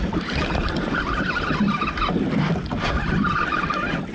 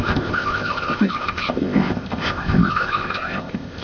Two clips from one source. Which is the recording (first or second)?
first